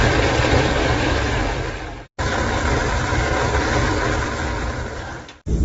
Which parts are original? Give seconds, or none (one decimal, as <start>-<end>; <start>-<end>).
0.0-0.8; 1.4-5.6